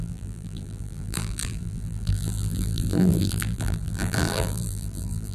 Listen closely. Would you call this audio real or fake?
fake